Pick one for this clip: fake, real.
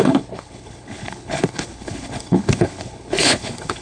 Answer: fake